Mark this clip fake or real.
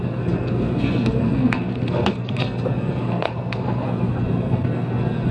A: fake